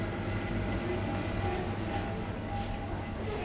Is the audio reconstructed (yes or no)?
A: no